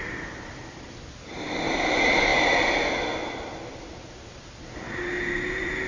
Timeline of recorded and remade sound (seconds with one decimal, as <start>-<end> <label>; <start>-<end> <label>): 0.0-5.9 recorded